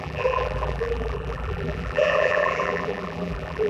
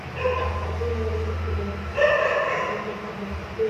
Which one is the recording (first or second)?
second